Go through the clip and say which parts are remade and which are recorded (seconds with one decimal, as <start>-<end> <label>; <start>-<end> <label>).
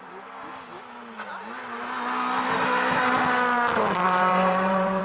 0.0-4.0 recorded; 4.0-5.0 remade